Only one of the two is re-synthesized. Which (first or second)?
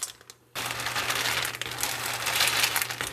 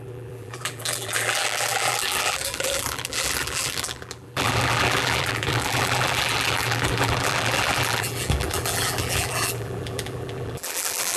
second